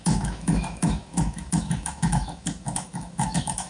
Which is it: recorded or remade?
remade